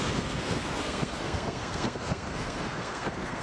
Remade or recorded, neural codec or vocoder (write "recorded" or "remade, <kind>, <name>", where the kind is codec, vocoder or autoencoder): remade, codec, SNAC